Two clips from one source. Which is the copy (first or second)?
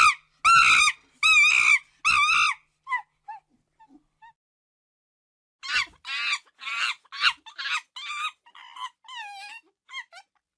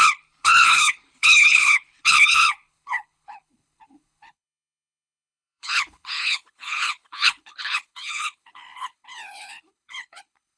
second